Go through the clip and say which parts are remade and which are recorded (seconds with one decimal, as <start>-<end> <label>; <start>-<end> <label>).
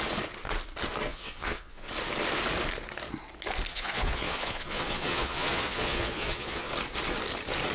0.0-1.1 recorded; 1.1-1.9 remade; 1.9-3.7 recorded; 3.7-6.7 remade; 6.7-7.7 recorded